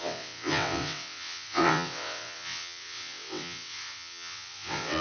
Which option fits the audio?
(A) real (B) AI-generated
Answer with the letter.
B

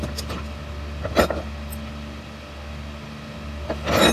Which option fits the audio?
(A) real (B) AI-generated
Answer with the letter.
A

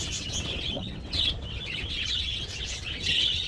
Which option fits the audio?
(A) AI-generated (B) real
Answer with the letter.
A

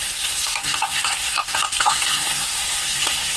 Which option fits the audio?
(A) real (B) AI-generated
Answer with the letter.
B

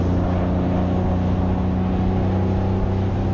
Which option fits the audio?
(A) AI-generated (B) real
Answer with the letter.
B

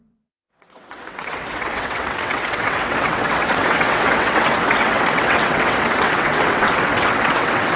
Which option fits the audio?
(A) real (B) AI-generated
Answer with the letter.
B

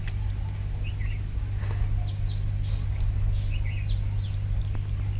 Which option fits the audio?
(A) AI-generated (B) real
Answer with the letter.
B